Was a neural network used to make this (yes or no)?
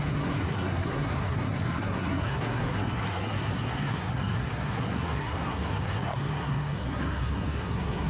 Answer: yes